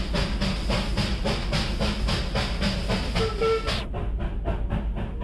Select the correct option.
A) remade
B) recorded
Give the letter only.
B